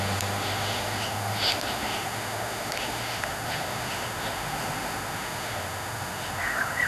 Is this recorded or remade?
remade